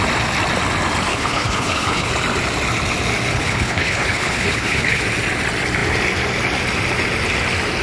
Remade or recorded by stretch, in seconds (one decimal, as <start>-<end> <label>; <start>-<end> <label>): 0.0-1.1 recorded; 1.1-2.1 remade; 2.1-3.3 recorded; 3.3-5.0 remade; 5.0-7.8 recorded